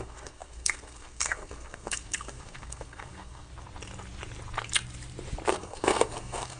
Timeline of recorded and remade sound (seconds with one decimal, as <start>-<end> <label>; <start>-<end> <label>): 0.0-3.5 remade; 3.5-5.5 recorded; 5.5-6.6 remade